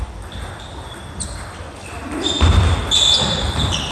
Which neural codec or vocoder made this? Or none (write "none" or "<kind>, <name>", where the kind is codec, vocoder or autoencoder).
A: none